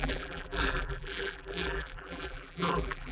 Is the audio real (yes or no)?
no